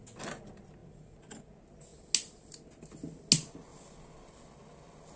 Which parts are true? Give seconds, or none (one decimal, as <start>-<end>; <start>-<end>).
0.0-0.8; 1.5-3.7; 4.5-5.2